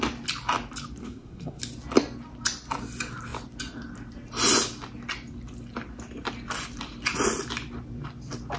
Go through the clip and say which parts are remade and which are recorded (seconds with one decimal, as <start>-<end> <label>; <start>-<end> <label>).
0.0-1.0 recorded; 1.0-1.6 remade; 1.6-8.6 recorded